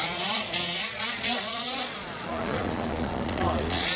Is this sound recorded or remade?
remade